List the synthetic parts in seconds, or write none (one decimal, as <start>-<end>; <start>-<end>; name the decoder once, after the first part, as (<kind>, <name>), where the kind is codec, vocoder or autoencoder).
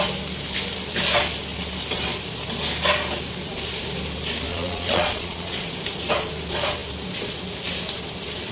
4.5-5.7 (vocoder, Vocos)